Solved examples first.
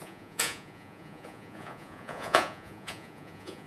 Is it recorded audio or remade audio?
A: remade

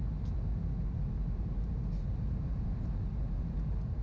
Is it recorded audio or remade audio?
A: recorded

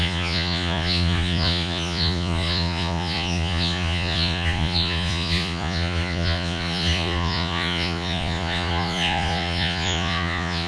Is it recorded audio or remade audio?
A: remade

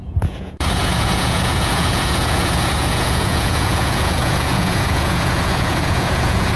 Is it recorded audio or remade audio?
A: remade